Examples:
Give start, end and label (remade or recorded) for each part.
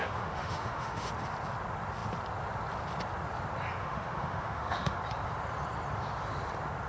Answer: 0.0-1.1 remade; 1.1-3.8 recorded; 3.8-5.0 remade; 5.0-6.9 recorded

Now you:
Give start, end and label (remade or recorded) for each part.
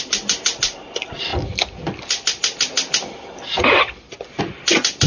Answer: 0.0-5.1 recorded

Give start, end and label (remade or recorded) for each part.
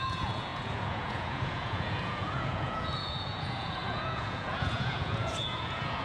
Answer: 0.0-6.0 remade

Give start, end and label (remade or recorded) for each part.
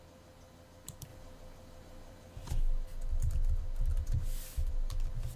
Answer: 0.0-1.1 recorded; 1.1-2.5 remade; 2.5-5.4 recorded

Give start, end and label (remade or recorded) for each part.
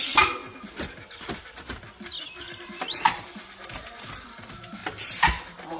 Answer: 0.0-5.8 recorded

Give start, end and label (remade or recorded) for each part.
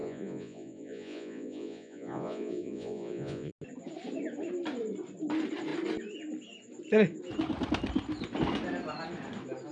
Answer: 0.0-3.5 remade; 3.5-9.7 recorded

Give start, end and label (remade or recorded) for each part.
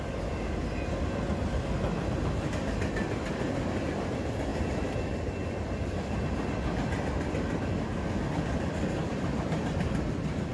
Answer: 0.0-10.5 recorded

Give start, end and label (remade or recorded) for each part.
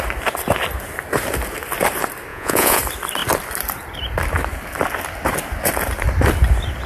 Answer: 0.0-2.3 recorded; 2.3-2.8 remade; 2.8-6.9 recorded